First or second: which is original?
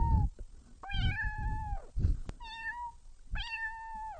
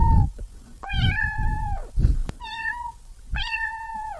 first